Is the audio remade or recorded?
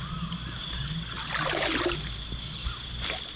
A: recorded